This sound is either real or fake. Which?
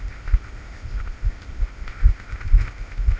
fake